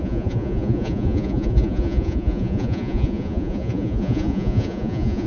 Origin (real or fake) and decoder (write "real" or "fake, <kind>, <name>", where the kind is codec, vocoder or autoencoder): fake, vocoder, Vocos